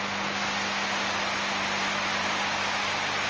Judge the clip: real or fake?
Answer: real